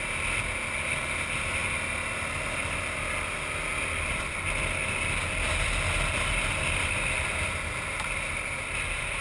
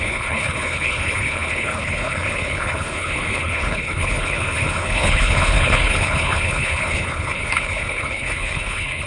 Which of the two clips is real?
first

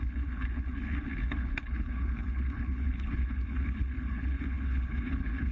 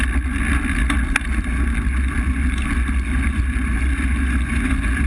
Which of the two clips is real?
second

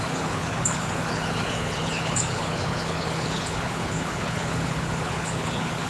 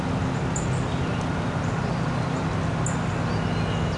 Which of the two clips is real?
second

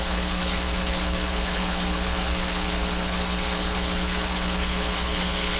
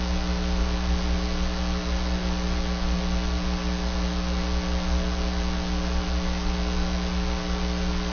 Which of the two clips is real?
second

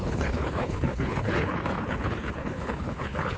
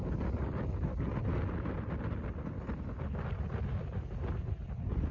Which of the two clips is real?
second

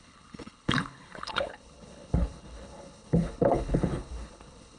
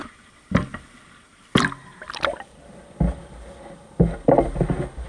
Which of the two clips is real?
second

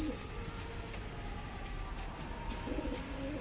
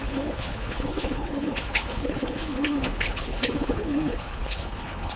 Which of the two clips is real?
first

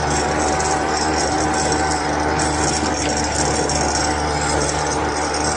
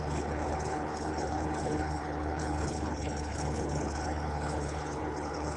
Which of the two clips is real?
first